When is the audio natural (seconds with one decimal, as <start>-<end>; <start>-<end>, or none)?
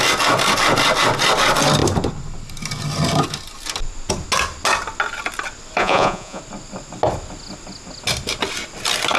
0.0-5.8; 6.4-9.2